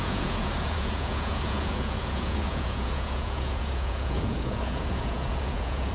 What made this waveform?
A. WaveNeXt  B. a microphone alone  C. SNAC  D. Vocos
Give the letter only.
D